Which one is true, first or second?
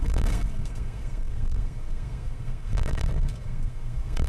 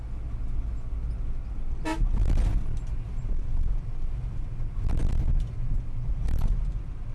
second